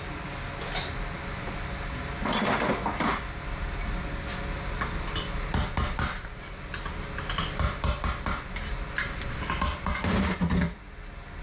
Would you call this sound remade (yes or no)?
no